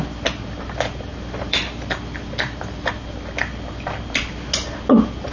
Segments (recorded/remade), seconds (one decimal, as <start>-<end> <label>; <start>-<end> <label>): 0.0-1.1 recorded; 1.1-2.9 remade; 2.9-5.3 recorded